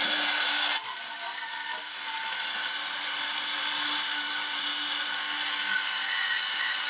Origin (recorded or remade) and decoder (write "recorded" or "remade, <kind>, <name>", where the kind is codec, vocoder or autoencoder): recorded